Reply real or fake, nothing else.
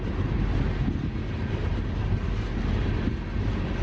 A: real